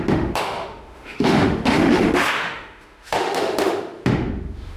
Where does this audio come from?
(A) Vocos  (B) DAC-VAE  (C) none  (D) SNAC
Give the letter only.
B